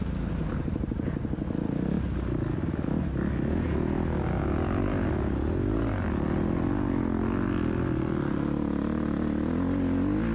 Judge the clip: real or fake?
real